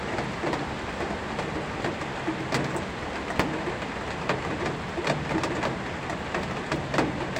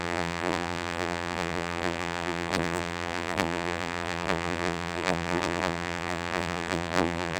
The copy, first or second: second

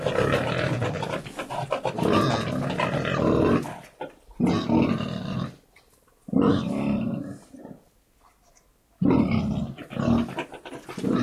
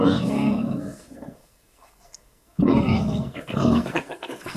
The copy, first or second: second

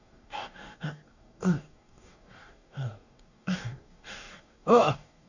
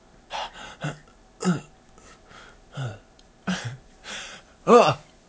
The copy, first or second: first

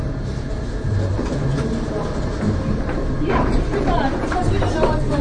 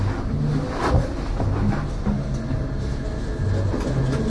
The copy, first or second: first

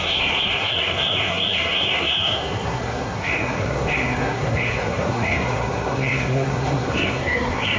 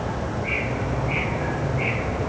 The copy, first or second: first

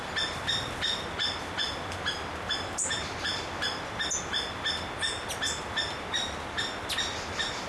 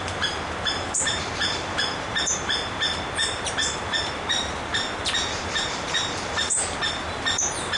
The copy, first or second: second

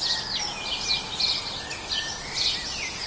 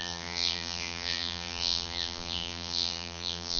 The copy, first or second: second